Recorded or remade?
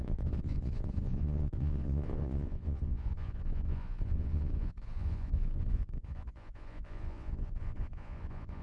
remade